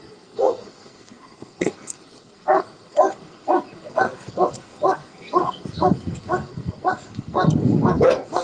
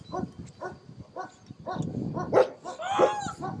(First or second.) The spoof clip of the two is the first